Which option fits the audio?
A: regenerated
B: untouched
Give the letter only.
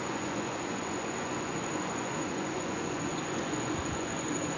A